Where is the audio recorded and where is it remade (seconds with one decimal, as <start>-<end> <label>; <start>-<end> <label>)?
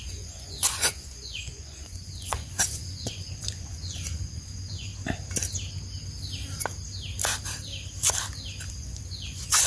0.0-4.9 remade; 4.9-8.7 recorded; 8.7-9.7 remade